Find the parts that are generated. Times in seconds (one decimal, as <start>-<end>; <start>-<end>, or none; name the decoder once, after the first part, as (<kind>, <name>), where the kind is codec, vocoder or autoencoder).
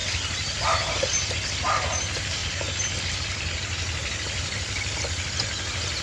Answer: none